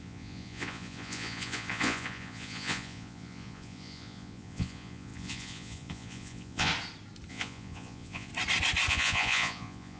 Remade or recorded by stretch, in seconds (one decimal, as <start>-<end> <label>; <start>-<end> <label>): 0.0-6.7 remade; 6.7-7.3 recorded; 7.3-8.3 remade; 8.3-8.9 recorded; 8.9-10.0 remade